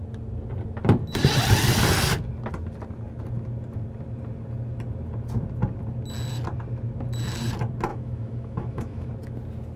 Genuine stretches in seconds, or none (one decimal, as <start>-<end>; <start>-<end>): 0.0-7.9; 9.1-9.8